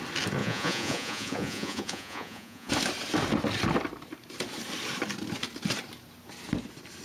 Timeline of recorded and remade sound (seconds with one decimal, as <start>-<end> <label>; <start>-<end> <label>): 0.0-0.4 recorded; 0.4-2.7 remade; 2.7-7.0 recorded